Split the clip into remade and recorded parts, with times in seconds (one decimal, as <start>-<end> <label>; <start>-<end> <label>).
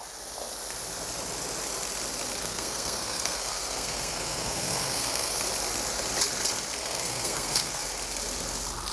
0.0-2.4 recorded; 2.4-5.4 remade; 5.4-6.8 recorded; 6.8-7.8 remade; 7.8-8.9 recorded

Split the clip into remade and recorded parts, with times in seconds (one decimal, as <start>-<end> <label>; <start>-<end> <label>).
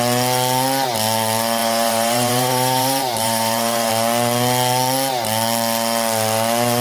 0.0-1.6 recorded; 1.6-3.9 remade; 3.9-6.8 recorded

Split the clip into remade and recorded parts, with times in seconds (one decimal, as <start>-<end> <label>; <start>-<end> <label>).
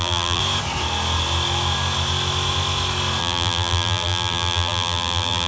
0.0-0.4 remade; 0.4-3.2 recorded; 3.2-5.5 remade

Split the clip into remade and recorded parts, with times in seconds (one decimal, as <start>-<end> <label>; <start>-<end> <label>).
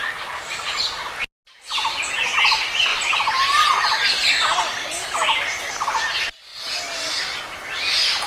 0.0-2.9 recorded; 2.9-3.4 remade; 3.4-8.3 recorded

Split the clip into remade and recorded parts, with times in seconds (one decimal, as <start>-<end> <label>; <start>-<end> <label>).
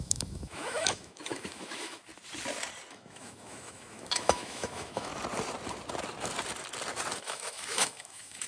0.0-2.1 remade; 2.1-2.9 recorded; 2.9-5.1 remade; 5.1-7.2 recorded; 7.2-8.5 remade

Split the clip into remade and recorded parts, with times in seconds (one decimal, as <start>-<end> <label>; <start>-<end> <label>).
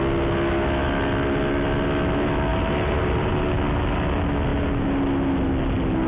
0.0-2.5 recorded; 2.5-3.3 remade; 3.3-6.1 recorded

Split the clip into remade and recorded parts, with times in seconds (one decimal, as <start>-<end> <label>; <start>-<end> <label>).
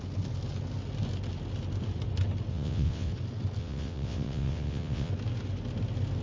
0.0-2.5 recorded; 2.5-3.1 remade; 3.1-3.6 recorded; 3.6-5.1 remade; 5.1-6.2 recorded